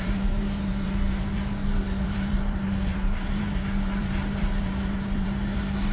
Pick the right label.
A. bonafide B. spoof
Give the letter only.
B